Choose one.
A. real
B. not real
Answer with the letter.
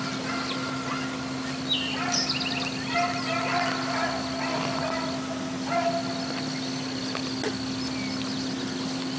A